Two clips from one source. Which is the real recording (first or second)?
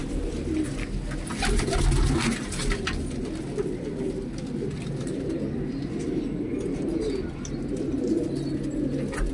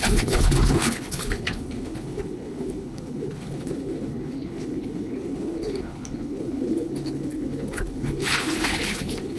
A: first